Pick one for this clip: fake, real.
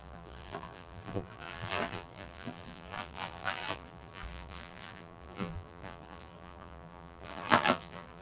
fake